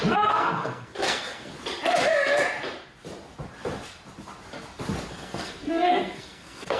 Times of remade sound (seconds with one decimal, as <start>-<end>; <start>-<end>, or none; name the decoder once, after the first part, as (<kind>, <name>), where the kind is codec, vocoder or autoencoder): 0.0-1.5 (codec, SNAC); 5.1-6.8